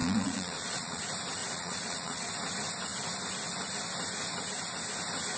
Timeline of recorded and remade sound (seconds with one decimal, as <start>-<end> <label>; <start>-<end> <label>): 0.0-1.0 remade; 1.0-1.4 recorded; 1.4-2.3 remade; 2.3-5.4 recorded